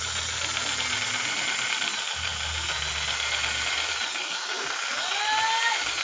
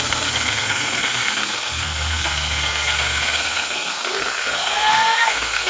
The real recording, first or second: first